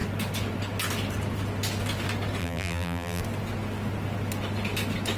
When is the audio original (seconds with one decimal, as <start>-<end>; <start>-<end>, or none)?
0.0-2.4; 3.2-5.2